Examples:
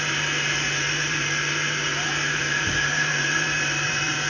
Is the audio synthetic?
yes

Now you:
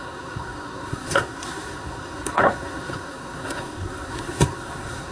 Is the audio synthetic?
yes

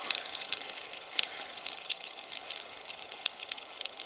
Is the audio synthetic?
yes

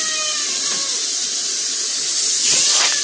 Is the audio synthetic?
no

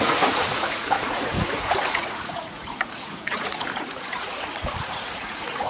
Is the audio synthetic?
yes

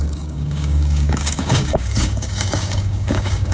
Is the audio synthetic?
yes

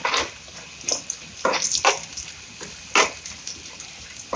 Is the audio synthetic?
no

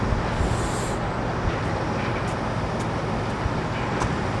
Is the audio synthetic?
no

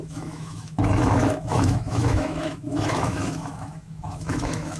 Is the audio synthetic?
yes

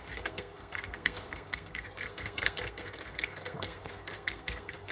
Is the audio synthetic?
yes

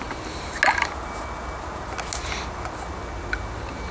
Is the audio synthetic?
no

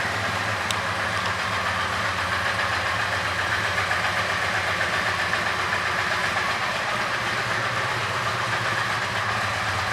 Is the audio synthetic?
no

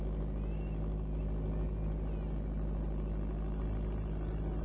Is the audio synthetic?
no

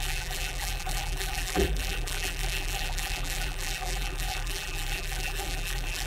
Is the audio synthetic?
yes